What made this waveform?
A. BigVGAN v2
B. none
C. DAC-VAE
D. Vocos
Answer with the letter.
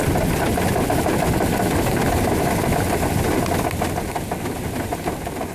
B